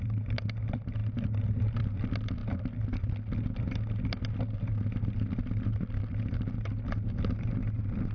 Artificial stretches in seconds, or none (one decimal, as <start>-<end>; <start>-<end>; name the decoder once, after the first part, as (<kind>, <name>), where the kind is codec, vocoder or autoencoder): none